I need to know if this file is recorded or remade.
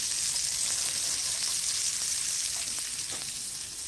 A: recorded